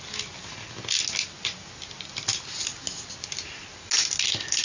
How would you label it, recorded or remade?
recorded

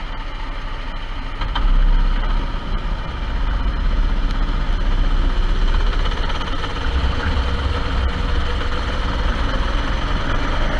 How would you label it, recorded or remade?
recorded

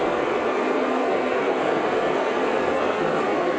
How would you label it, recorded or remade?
remade